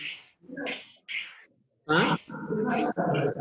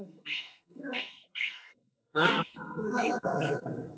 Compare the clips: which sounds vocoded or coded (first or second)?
second